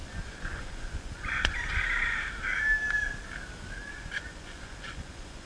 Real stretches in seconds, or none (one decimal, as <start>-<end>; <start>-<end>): 1.7-3.8